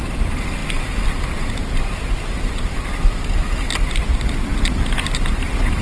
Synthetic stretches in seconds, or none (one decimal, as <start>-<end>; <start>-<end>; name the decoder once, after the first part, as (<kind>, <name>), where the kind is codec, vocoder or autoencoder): none